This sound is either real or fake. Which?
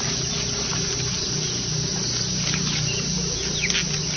real